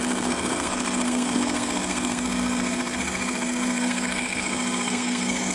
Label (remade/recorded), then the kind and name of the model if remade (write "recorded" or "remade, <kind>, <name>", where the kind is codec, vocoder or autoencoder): remade, codec, SNAC